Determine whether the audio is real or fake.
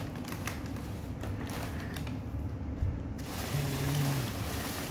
real